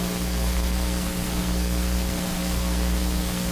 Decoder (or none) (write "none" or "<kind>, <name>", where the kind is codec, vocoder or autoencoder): codec, SNAC